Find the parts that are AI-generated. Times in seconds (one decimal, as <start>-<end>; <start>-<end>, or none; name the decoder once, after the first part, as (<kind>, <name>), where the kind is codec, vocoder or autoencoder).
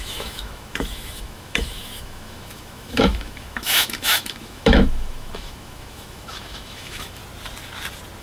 0.0-7.2 (autoencoder, DAC-VAE)